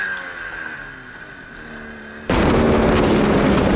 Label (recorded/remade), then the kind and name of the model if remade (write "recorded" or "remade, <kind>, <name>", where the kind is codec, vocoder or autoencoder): recorded